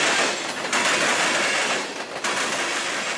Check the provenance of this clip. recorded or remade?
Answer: recorded